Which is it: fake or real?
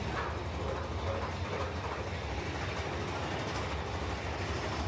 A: real